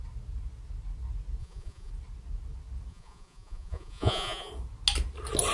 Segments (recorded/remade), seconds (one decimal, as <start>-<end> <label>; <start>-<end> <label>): 0.0-1.4 recorded; 1.4-1.9 remade; 1.9-2.9 recorded; 2.9-4.5 remade; 4.5-5.5 recorded